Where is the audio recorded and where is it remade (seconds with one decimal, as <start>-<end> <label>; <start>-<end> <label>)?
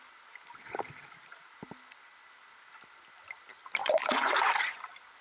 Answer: 0.0-3.8 recorded; 3.8-4.8 remade; 4.8-5.2 recorded